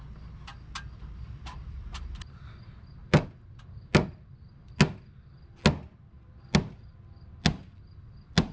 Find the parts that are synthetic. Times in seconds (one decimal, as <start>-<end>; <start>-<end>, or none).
none